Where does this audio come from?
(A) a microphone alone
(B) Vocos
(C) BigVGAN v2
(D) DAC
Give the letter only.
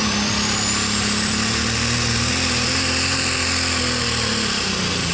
A